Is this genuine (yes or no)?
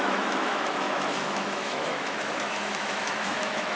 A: no